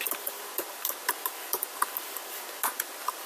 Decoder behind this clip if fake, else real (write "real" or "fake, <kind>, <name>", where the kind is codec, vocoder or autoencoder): real